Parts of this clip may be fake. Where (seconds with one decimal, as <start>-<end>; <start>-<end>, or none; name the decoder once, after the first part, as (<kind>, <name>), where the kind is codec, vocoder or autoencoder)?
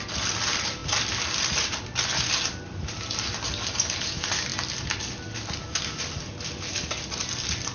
none